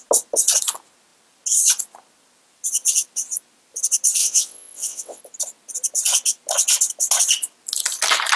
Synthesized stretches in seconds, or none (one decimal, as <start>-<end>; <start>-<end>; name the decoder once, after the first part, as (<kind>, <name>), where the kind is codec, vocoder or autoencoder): 4.2-5.2 (vocoder, WaveNeXt)